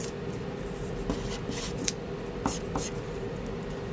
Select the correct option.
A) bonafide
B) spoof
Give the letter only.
A